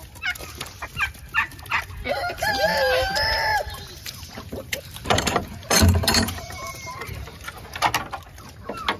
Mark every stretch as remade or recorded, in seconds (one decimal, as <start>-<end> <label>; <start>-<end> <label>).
0.0-3.5 recorded; 3.5-7.6 remade; 7.6-9.0 recorded